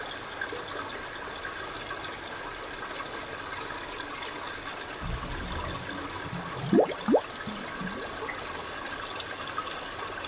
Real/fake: real